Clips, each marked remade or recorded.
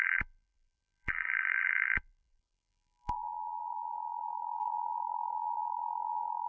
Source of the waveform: remade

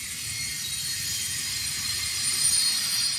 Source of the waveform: remade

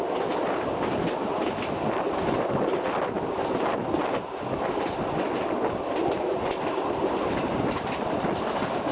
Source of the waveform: recorded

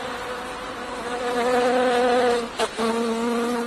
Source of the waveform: remade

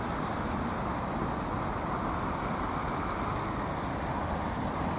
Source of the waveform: recorded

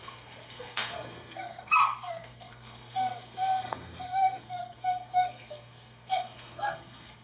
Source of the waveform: remade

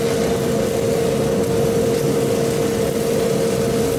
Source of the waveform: recorded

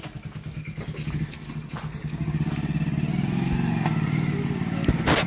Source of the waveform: recorded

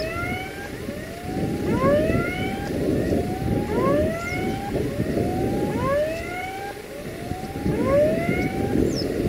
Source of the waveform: recorded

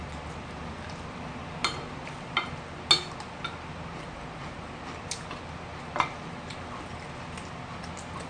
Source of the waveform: recorded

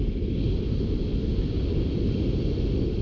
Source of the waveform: recorded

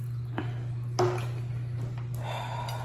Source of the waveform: recorded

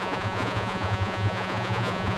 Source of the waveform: remade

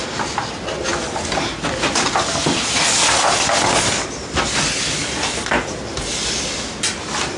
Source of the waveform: recorded